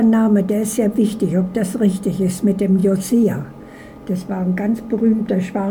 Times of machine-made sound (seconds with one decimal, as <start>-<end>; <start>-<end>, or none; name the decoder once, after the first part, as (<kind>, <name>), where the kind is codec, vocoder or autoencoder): 2.8-3.6 (vocoder, BigVGAN v2)